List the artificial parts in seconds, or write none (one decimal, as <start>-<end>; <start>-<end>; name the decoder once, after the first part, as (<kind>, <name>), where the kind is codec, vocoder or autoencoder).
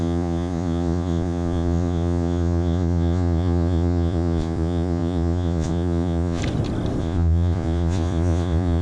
0.0-6.4 (vocoder, Vocos); 7.0-8.8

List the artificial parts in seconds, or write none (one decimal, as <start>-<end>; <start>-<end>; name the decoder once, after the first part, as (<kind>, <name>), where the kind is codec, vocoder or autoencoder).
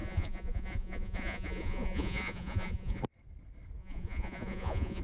0.0-3.0 (vocoder, Vocos); 3.8-5.0